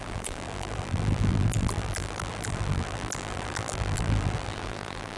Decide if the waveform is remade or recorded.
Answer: remade